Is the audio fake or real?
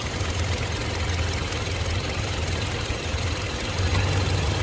real